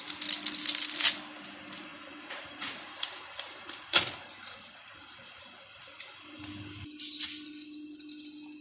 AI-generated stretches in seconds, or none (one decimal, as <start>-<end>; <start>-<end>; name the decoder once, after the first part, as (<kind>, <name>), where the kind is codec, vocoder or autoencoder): 1.9-5.4 (vocoder, BigVGAN v2)